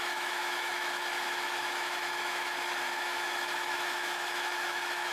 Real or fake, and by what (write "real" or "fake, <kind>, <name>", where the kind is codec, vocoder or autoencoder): fake, autoencoder, DAC-VAE